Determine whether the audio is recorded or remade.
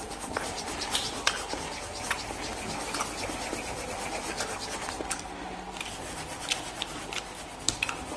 recorded